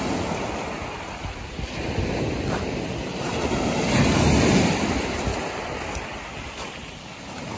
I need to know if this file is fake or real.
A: real